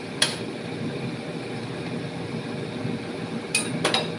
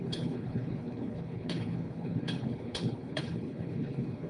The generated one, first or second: second